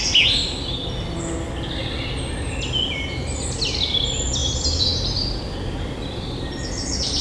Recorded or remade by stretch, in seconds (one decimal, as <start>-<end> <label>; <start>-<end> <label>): 0.0-4.4 recorded; 4.4-6.4 remade; 6.4-7.2 recorded

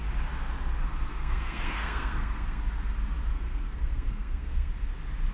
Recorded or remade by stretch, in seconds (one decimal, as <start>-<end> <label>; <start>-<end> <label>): 0.0-1.1 recorded; 1.1-2.6 remade; 2.6-3.3 recorded; 3.3-4.7 remade; 4.7-5.3 recorded

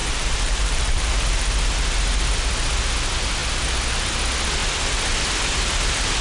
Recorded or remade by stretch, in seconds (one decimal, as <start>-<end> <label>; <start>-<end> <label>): 0.0-1.1 remade; 1.1-6.2 recorded

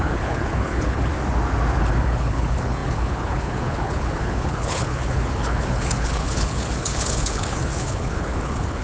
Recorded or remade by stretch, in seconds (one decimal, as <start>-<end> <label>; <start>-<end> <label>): 0.0-1.1 remade; 1.1-1.8 recorded; 1.8-8.8 remade

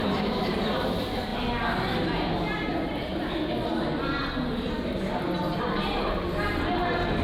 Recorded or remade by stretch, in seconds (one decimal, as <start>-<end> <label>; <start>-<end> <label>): 0.0-1.3 remade; 1.3-5.6 recorded; 5.6-7.2 remade

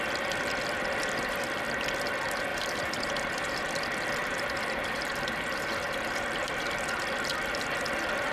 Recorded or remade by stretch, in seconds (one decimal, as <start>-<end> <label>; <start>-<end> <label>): 0.0-2.5 recorded; 2.5-3.6 remade; 3.6-4.2 recorded; 4.2-6.5 remade; 6.5-8.3 recorded

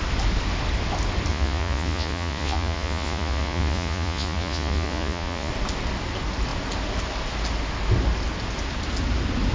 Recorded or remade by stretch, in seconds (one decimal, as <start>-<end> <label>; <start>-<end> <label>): 0.0-1.3 recorded; 1.3-5.5 remade; 5.5-9.5 recorded

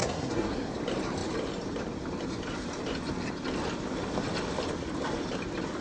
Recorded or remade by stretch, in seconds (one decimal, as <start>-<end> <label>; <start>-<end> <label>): 0.0-0.7 remade; 0.7-5.8 recorded